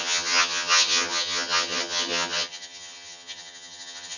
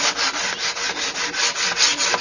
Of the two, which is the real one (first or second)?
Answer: second